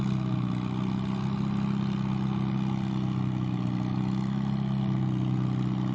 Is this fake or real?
real